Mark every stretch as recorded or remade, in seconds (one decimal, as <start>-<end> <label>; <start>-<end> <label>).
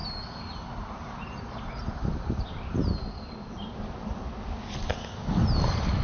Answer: 0.0-6.0 recorded